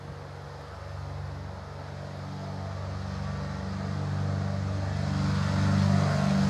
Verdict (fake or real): real